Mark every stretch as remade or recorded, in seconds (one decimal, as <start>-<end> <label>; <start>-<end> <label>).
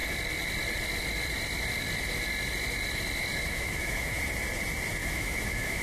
0.0-3.4 recorded; 3.4-4.2 remade; 4.2-5.0 recorded; 5.0-5.8 remade